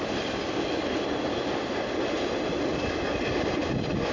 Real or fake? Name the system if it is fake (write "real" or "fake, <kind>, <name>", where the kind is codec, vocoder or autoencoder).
real